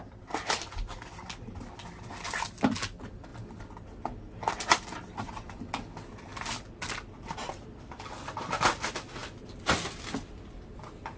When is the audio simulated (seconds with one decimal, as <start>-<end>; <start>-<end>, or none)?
none